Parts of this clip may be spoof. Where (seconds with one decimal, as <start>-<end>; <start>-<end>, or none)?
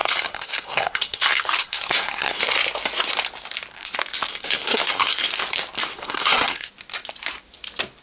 0.0-2.4; 4.3-5.3; 5.9-6.7